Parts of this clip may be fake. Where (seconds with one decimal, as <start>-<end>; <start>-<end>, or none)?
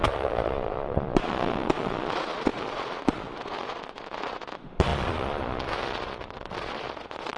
0.0-7.4